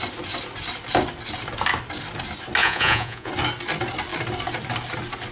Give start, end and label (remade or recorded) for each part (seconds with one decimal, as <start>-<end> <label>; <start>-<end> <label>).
0.0-2.6 recorded; 2.6-3.3 remade; 3.3-5.3 recorded